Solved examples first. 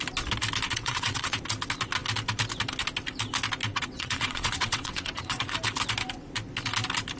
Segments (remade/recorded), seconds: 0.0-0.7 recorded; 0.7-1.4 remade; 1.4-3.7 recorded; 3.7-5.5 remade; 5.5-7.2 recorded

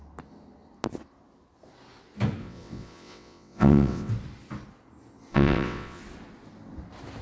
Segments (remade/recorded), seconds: 0.0-2.4 recorded; 2.4-4.1 remade; 4.1-5.3 recorded; 5.3-6.0 remade; 6.0-7.2 recorded

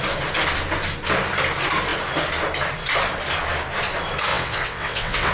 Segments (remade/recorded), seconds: 0.0-4.3 recorded; 4.3-5.3 remade

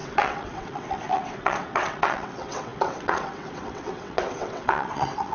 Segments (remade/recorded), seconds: 0.0-5.3 remade

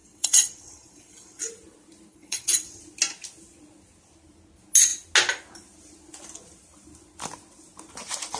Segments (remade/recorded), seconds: 0.0-1.4 remade; 1.4-2.1 recorded; 2.1-2.8 remade; 2.8-8.4 recorded